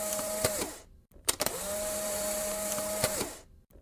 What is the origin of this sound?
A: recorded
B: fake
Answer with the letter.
B